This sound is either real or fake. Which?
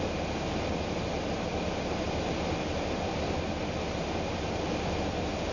real